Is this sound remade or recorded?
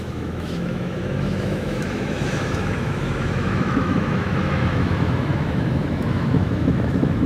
remade